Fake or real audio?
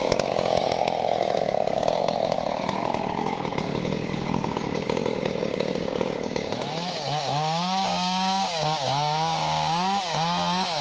fake